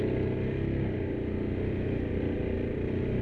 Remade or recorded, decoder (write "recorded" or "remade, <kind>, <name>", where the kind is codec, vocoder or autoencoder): recorded